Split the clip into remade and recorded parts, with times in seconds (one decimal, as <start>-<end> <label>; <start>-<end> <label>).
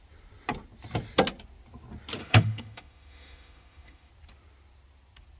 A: 0.0-2.2 recorded; 2.2-4.1 remade; 4.1-5.4 recorded